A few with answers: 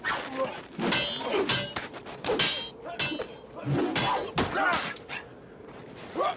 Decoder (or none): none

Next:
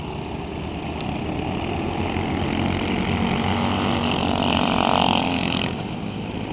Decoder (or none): none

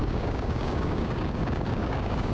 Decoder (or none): codec, DAC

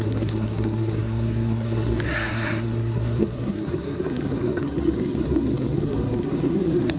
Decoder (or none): codec, SNAC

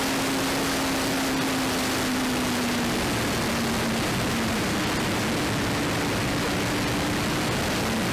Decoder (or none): none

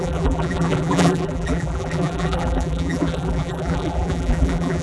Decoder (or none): vocoder, BigVGAN v2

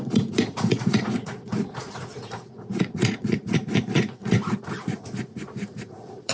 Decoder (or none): vocoder, Vocos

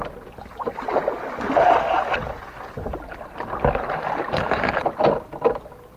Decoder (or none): none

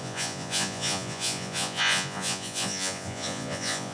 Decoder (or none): vocoder, Vocos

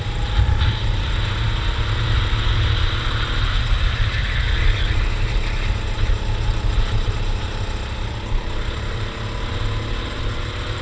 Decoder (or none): none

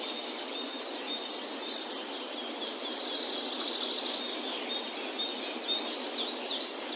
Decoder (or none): none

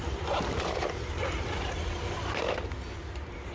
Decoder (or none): none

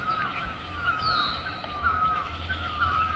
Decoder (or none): autoencoder, DAC-VAE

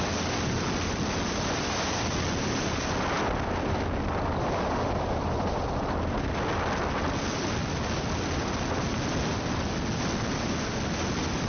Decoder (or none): none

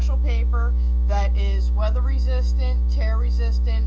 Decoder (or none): autoencoder, DAC-VAE